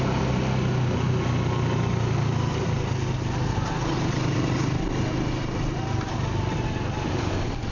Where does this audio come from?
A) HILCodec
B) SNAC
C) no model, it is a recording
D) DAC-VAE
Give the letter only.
C